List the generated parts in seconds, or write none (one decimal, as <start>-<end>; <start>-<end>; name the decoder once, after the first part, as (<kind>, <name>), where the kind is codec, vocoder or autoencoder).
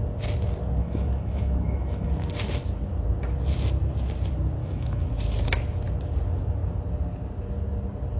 0.8-2.1 (autoencoder, DAC-VAE); 4.6-5.1